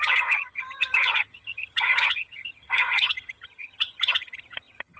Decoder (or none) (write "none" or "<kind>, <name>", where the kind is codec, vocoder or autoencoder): vocoder, HiFi-GAN